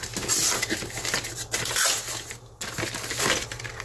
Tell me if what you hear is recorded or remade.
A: recorded